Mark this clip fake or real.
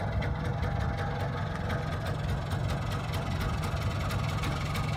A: real